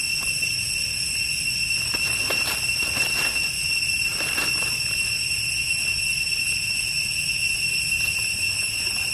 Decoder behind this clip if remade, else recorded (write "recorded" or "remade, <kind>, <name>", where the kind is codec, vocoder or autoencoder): recorded